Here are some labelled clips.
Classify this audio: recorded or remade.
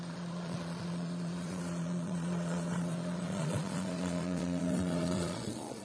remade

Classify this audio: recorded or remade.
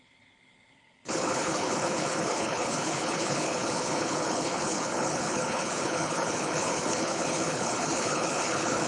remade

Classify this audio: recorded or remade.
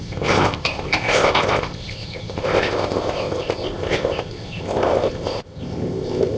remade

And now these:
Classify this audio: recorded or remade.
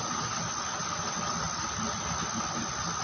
recorded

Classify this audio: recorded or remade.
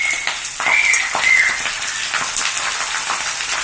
recorded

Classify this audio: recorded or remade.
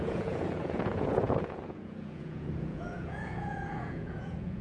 remade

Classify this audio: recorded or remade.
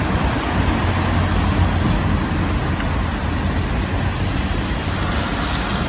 recorded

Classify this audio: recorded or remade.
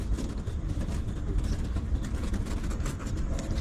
remade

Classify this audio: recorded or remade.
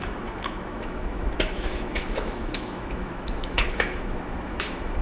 remade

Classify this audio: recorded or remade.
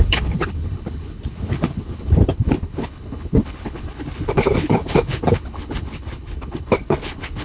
remade